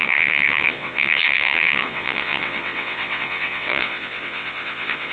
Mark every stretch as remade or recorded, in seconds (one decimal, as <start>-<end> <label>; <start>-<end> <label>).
0.0-5.1 remade